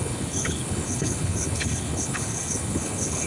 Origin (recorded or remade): remade